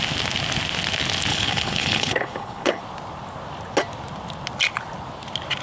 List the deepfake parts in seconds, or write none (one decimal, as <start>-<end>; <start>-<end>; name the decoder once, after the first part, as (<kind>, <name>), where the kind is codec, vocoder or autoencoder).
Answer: 1.3-2.8 (codec, HILCodec)